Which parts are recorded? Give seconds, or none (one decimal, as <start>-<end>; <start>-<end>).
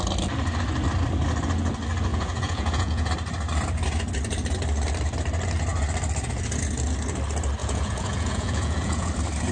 0.0-2.1; 3.1-7.6; 9.1-9.5